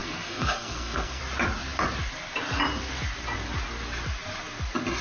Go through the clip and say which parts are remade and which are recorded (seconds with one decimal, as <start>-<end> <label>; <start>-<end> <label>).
0.0-1.2 remade; 1.2-5.0 recorded